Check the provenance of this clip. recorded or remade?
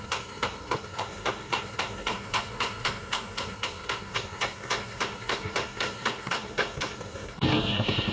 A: remade